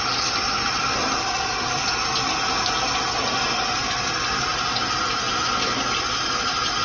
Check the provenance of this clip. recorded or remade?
recorded